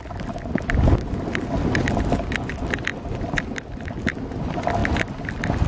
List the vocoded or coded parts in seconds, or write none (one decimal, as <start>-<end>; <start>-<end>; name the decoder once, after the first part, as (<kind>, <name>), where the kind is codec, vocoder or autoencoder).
4.8-5.7 (vocoder, BigVGAN v2)